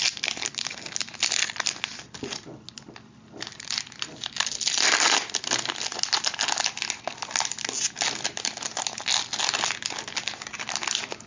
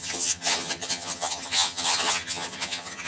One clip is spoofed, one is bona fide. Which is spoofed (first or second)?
second